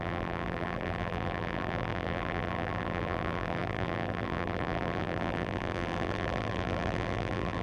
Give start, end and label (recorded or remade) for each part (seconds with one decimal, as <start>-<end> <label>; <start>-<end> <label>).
0.0-7.6 remade